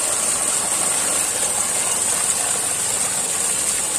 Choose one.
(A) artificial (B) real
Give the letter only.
B